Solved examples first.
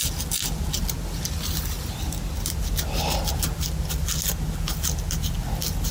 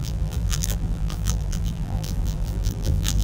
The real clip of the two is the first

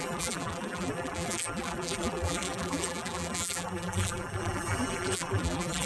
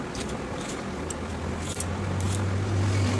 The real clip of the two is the second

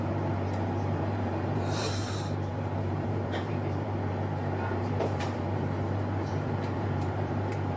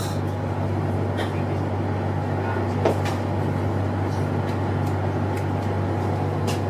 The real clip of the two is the second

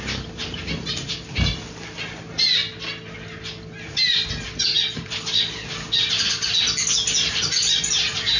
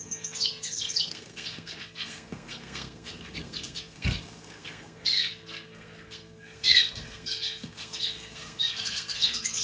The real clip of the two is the first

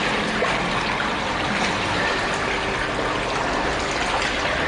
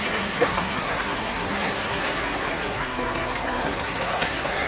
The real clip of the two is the first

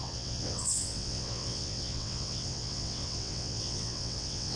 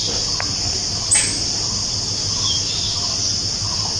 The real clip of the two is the second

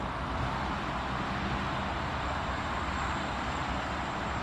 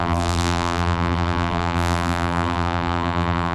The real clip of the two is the first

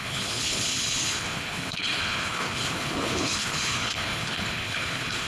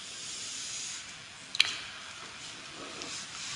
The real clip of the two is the second